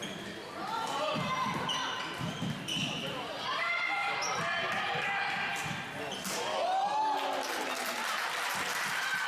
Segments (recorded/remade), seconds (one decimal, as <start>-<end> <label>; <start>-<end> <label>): 0.0-4.0 remade; 4.0-4.6 recorded; 4.6-5.5 remade; 5.5-7.8 recorded; 7.8-9.3 remade